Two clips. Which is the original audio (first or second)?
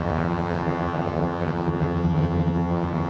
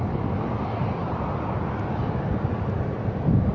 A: second